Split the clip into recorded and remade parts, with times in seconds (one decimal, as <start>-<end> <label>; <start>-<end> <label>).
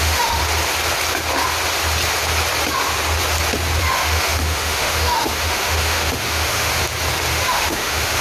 0.0-0.4 remade; 0.4-3.8 recorded; 3.8-6.8 remade; 6.8-7.3 recorded; 7.3-8.2 remade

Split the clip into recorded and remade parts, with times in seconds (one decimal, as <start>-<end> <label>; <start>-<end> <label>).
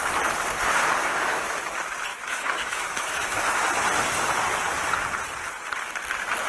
0.0-1.0 recorded; 1.0-1.6 remade; 1.6-2.1 recorded; 2.1-3.7 remade; 3.7-6.5 recorded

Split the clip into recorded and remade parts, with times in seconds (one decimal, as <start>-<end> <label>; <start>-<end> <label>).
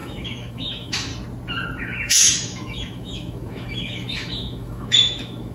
0.0-1.1 remade; 1.1-1.8 recorded; 1.8-5.5 remade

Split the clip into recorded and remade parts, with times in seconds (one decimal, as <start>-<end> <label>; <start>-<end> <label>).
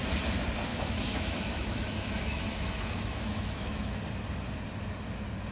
0.0-0.7 recorded; 0.7-4.0 remade; 4.0-5.5 recorded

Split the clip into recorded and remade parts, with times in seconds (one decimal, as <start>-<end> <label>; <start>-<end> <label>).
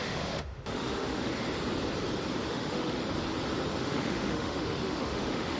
0.0-1.3 remade; 1.3-2.5 recorded; 2.5-3.0 remade; 3.0-3.8 recorded; 3.8-5.6 remade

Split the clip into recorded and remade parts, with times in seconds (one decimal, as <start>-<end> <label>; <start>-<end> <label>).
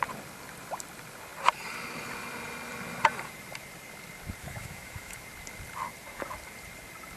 0.0-4.4 recorded; 4.4-5.2 remade; 5.2-7.2 recorded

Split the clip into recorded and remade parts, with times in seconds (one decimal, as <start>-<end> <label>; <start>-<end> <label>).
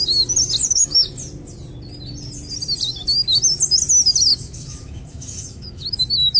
0.0-0.6 recorded; 0.6-1.1 remade; 1.1-4.3 recorded; 4.3-6.4 remade